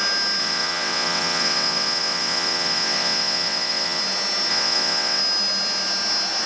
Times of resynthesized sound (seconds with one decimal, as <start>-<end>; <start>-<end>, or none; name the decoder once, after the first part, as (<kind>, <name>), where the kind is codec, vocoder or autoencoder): 0.4-4.0 (vocoder, WaveNeXt); 4.5-5.2